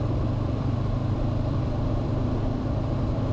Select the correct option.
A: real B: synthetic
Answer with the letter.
B